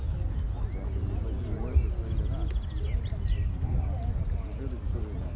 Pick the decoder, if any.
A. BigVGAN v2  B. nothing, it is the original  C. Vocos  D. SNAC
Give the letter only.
B